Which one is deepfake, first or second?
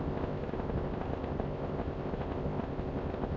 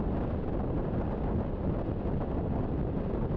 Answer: first